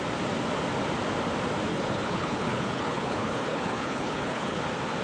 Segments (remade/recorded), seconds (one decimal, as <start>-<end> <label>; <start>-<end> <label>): 0.0-1.7 recorded; 1.7-4.6 remade; 4.6-5.0 recorded